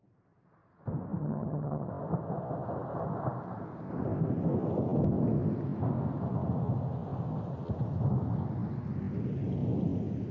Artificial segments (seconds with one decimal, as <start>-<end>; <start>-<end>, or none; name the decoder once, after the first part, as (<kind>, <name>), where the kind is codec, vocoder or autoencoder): 1.2-1.9 (vocoder, HiFi-GAN)